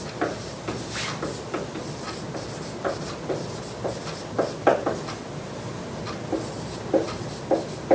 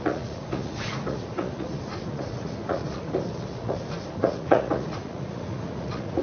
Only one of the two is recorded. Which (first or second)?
first